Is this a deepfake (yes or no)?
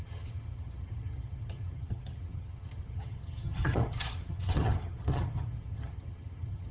yes